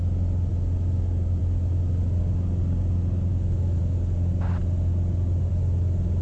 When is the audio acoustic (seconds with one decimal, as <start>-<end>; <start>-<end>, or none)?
0.0-3.3; 3.8-6.2